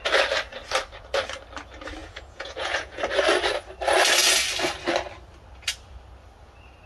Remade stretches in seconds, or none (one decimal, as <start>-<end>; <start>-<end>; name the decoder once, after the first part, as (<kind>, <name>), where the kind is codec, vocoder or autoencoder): 2.0-3.0 (vocoder, Vocos)